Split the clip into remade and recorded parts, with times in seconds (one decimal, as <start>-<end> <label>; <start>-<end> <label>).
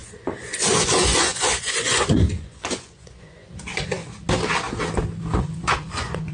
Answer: 0.0-4.0 remade; 4.0-5.4 recorded; 5.4-6.3 remade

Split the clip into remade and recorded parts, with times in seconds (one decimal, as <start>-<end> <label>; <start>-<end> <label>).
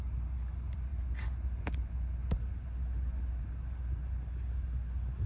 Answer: 0.0-5.3 recorded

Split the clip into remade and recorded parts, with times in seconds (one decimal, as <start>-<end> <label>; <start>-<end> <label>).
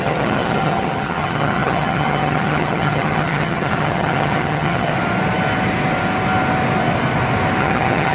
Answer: 0.0-4.9 remade; 4.9-7.6 recorded; 7.6-8.1 remade